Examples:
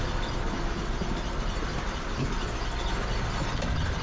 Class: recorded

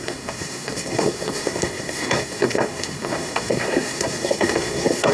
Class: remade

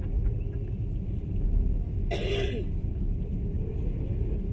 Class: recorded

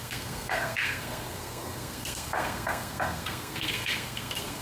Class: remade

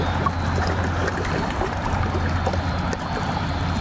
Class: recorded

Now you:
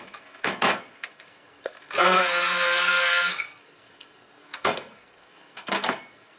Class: remade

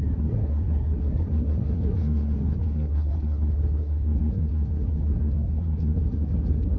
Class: remade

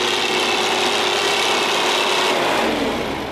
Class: recorded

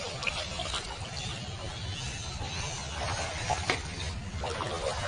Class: recorded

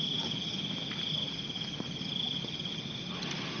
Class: recorded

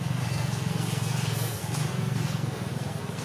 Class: remade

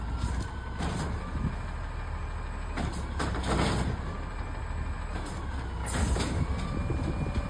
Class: recorded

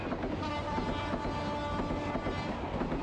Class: recorded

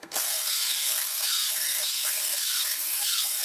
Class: remade